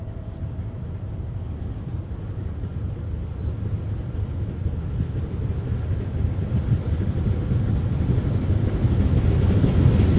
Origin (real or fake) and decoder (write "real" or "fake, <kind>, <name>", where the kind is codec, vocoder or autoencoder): real